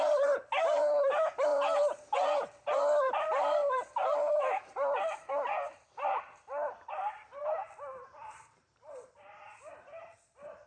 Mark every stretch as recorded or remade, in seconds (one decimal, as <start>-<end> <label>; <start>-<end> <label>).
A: 0.0-7.4 remade; 7.4-9.7 recorded; 9.7-10.7 remade